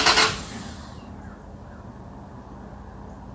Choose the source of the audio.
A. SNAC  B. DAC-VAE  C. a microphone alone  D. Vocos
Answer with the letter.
C